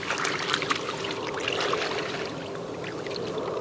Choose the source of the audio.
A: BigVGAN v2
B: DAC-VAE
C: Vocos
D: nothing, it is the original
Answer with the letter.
D